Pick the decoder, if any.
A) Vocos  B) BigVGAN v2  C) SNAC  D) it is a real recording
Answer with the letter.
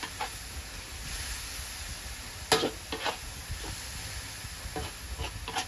D